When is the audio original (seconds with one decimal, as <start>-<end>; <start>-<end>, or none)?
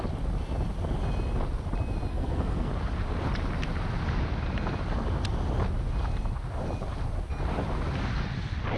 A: 0.0-2.1; 2.7-8.8